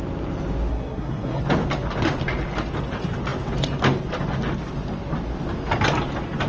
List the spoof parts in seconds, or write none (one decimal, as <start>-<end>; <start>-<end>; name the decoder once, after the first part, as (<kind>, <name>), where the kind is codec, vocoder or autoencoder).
0.7-1.4 (codec, SNAC)